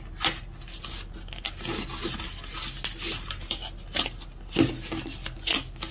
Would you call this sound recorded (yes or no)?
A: yes